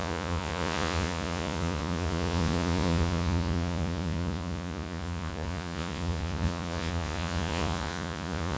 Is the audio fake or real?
fake